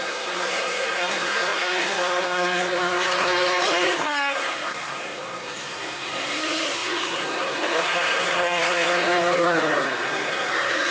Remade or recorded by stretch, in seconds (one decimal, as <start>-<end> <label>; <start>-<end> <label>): 0.0-10.9 remade